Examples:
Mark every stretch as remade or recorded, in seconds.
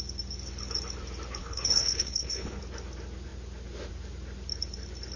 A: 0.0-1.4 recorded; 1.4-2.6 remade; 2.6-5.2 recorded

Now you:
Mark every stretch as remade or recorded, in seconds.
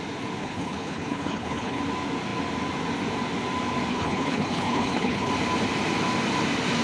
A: 0.0-0.4 recorded; 0.4-1.8 remade; 1.8-3.9 recorded; 3.9-5.3 remade; 5.3-6.8 recorded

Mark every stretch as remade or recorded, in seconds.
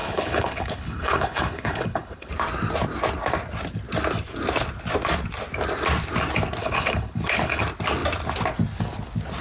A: 0.0-2.3 remade; 2.3-6.6 recorded; 6.6-7.6 remade; 7.6-9.4 recorded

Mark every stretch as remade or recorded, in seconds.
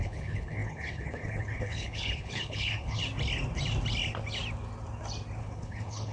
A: 0.0-3.0 remade; 3.0-5.4 recorded; 5.4-6.1 remade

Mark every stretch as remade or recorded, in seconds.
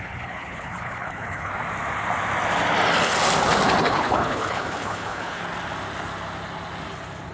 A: 0.0-1.5 remade; 1.5-3.8 recorded; 3.8-5.4 remade; 5.4-7.3 recorded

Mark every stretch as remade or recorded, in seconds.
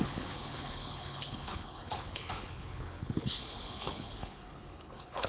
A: 0.0-5.3 remade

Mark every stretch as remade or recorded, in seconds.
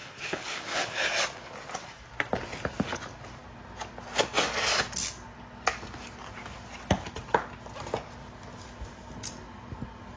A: 0.0-1.1 remade; 1.1-10.2 recorded